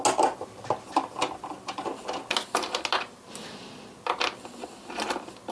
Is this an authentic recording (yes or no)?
yes